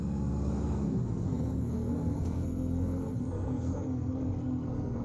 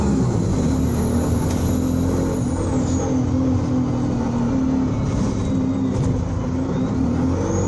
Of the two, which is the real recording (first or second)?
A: second